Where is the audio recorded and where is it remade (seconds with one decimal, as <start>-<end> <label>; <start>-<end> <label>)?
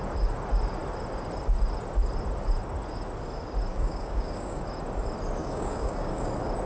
0.0-3.7 recorded; 3.7-4.6 remade; 4.6-5.4 recorded; 5.4-6.3 remade; 6.3-6.7 recorded